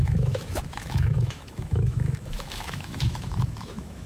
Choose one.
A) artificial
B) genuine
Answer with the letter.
A